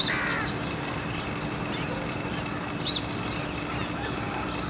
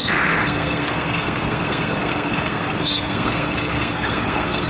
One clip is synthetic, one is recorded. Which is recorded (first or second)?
first